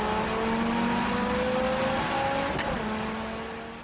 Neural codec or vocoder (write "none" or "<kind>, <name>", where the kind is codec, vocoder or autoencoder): none